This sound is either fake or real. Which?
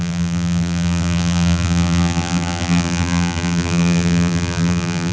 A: fake